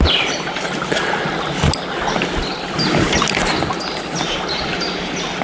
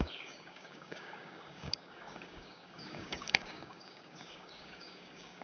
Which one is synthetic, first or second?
second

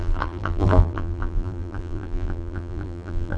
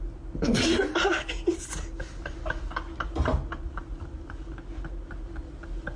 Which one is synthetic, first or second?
first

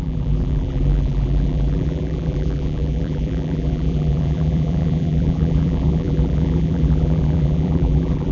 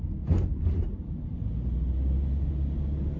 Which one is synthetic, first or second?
first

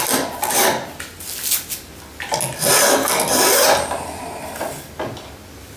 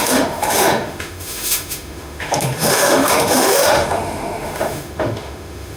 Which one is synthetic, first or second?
second